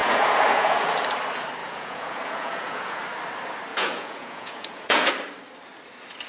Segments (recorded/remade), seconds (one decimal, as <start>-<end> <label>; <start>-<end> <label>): 0.0-0.9 remade; 0.9-1.6 recorded; 1.6-3.0 remade; 3.0-3.7 recorded; 3.7-5.1 remade; 5.1-6.3 recorded